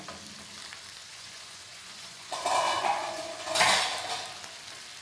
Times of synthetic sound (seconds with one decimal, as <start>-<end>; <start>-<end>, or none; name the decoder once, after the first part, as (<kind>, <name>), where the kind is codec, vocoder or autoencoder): 1.0-3.6 (vocoder, Vocos)